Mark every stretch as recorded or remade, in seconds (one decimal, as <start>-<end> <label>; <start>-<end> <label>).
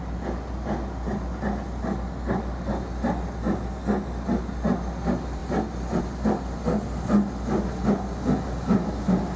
0.0-9.4 recorded